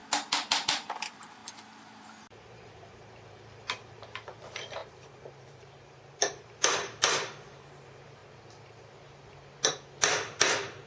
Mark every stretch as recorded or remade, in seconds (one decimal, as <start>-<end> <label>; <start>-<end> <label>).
0.0-0.7 recorded; 0.7-1.4 remade; 1.4-2.2 recorded; 2.2-8.2 remade; 8.2-10.4 recorded; 10.4-10.9 remade